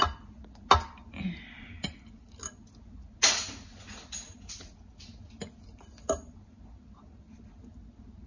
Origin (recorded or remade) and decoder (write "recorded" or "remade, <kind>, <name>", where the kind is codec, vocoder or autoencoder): recorded